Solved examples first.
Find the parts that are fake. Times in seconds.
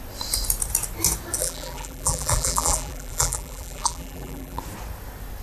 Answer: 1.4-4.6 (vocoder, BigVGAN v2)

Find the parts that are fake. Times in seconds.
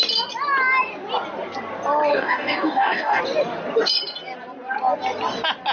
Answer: 2.1-3.2 (codec, DAC)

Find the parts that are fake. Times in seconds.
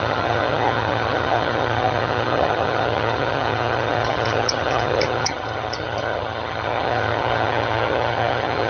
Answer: 0.0-8.7 (vocoder, HiFi-GAN)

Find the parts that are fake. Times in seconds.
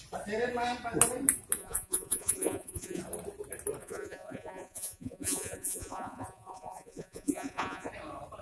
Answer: 1.6-3.0 (vocoder, Vocos); 3.8-7.9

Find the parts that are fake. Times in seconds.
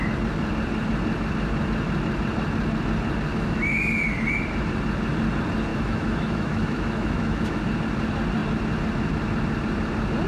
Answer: 3.3-3.9 (autoencoder, DAC-VAE); 5.7-7.6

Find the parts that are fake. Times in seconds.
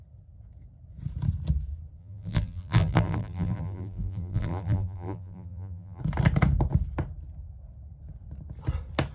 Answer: 2.0-6.0 (vocoder, BigVGAN v2)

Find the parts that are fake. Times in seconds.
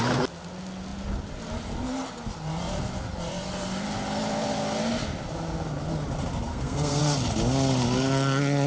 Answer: 6.5-7.0 (codec, SNAC)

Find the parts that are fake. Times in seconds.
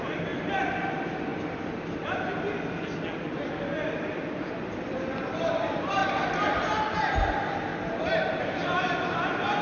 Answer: 0.0-1.3 (vocoder, BigVGAN v2); 4.0-6.0; 7.0-9.6